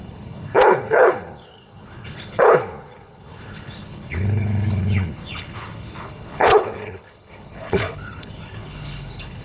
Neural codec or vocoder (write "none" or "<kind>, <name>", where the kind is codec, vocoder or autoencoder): codec, HILCodec